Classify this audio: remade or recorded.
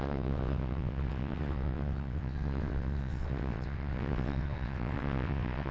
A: remade